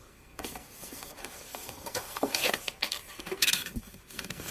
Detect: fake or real fake